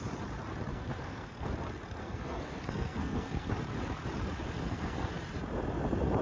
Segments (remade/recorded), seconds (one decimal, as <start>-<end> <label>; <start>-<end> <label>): 0.0-0.7 recorded; 0.7-1.5 remade; 1.5-2.0 recorded; 2.0-3.5 remade; 3.5-4.6 recorded; 4.6-5.1 remade; 5.1-6.2 recorded